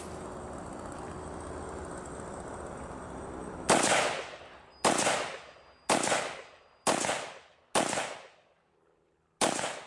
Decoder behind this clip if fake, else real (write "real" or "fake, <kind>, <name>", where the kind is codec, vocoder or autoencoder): real